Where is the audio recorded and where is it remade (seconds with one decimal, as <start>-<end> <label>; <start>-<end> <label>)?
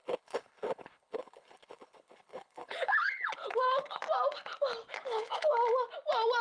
0.0-4.0 remade; 4.0-4.9 recorded; 4.9-5.5 remade; 5.5-6.4 recorded